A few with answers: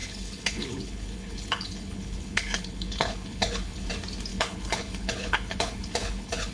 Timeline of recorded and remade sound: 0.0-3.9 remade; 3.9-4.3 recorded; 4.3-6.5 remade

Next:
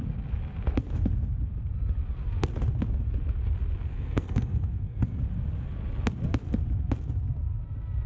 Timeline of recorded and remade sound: 0.0-3.9 recorded; 3.9-5.2 remade; 5.2-8.1 recorded

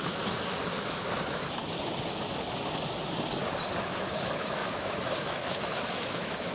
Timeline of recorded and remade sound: 0.0-1.4 remade; 1.4-3.8 recorded; 3.8-6.5 remade

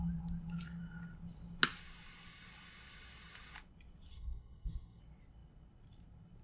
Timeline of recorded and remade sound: 0.0-4.1 recorded; 4.1-5.0 remade; 5.0-6.4 recorded

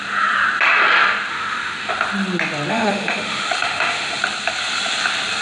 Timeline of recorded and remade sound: 0.0-1.3 recorded; 1.3-1.9 remade; 1.9-2.7 recorded; 2.7-4.2 remade; 4.2-5.4 recorded

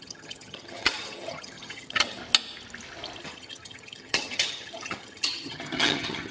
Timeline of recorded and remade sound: 0.0-2.2 remade; 2.2-3.2 recorded; 3.2-6.3 remade

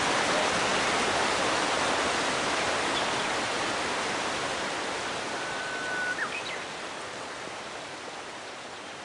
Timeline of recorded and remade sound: 0.0-9.0 recorded

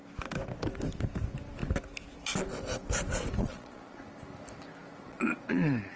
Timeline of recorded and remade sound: 0.0-3.4 recorded; 3.4-4.0 remade; 4.0-5.0 recorded; 5.0-6.0 remade